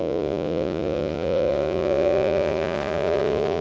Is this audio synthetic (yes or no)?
yes